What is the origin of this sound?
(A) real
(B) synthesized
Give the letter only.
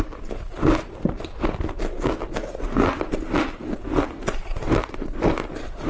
A